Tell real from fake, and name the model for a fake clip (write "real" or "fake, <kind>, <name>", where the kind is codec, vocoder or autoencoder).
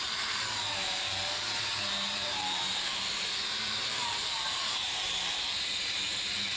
fake, vocoder, BigVGAN v2